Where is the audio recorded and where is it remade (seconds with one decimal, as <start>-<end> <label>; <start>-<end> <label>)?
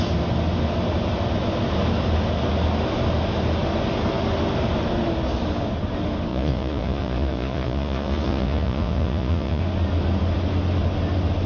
0.0-6.3 recorded; 6.3-9.6 remade; 9.6-11.5 recorded